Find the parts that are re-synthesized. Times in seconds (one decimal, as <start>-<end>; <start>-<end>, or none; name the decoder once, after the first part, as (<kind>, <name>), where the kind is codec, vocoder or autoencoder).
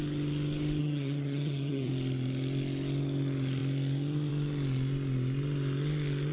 0.8-1.9 (vocoder, HiFi-GAN)